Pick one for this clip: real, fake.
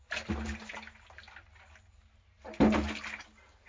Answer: real